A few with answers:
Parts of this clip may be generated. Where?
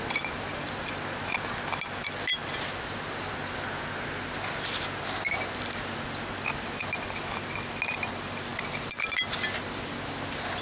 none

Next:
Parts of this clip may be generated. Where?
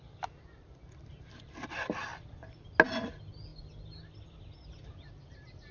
none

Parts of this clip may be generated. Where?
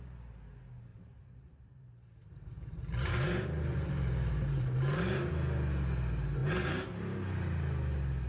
0.9-5.3 (vocoder, BigVGAN v2)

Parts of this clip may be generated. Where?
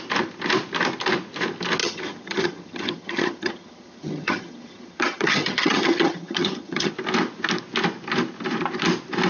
1.8-6.9 (vocoder, HiFi-GAN)